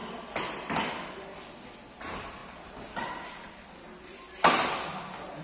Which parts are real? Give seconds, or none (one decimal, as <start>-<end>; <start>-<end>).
0.0-5.4